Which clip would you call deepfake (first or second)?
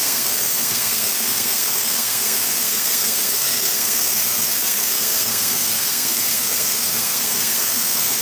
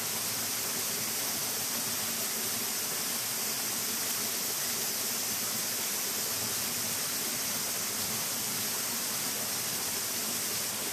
first